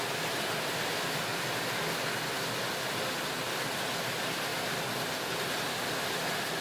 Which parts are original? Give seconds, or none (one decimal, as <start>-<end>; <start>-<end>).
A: 1.3-4.1; 4.5-5.8